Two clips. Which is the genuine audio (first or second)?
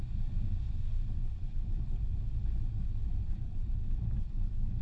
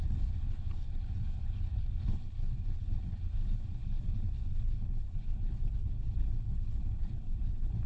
first